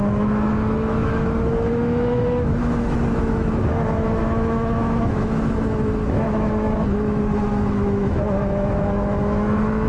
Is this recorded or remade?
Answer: remade